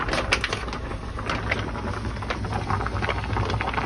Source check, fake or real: real